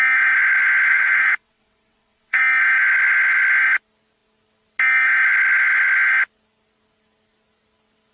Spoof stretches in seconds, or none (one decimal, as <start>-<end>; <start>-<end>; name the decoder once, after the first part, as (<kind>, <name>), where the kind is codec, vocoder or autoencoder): 0.9-2.4 (vocoder, WaveNeXt)